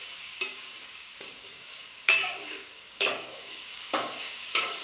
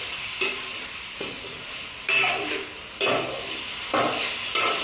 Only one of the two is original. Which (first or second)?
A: second